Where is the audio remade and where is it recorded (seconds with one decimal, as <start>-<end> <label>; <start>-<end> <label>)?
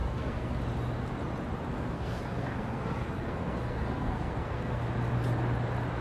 0.0-0.6 remade; 0.6-1.7 recorded; 1.7-4.8 remade; 4.8-6.0 recorded